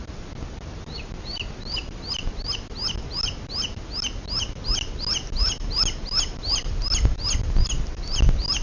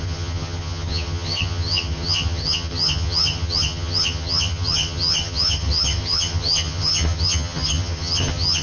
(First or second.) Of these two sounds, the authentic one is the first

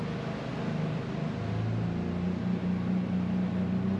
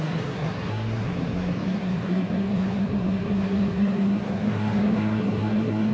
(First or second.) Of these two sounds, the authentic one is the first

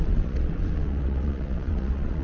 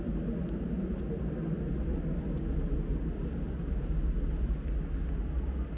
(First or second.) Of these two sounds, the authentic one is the second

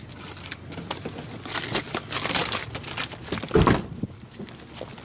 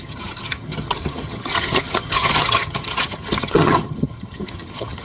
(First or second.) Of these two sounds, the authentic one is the first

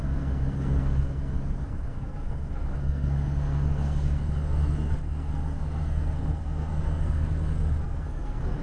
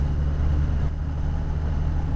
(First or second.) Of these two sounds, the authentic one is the second